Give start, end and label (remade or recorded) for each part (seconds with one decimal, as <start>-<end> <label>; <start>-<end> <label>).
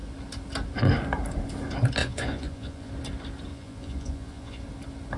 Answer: 0.0-2.0 recorded; 2.0-2.9 remade; 2.9-3.5 recorded; 3.5-4.6 remade; 4.6-5.2 recorded